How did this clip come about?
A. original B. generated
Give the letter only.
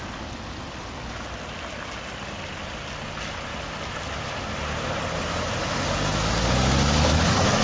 A